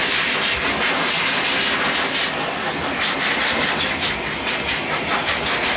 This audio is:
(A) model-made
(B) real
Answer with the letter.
B